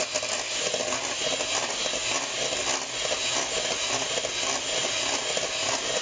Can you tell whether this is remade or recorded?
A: recorded